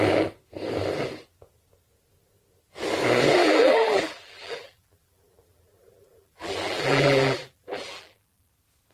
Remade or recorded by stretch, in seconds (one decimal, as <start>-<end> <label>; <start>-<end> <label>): 0.0-3.4 recorded; 3.4-8.5 remade; 8.5-8.9 recorded